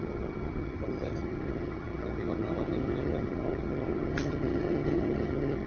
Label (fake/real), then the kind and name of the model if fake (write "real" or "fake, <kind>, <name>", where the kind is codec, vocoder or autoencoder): fake, vocoder, HiFi-GAN